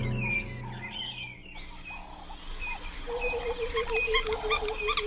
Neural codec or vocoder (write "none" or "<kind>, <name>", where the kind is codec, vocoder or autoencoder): none